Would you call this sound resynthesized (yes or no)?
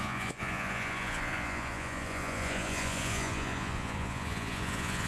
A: yes